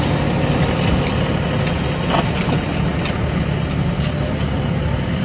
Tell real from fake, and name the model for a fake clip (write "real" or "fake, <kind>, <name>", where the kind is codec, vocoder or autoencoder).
real